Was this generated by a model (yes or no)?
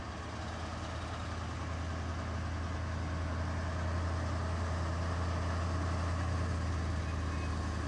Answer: no